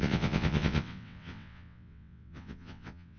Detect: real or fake fake